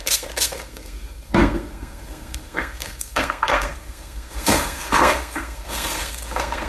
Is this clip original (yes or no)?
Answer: no